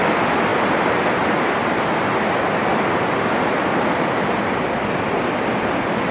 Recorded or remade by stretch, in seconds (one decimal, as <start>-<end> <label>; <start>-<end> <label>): 0.0-6.1 recorded